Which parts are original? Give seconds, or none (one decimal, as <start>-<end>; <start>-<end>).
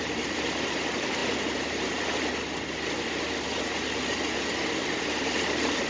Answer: 0.0-5.9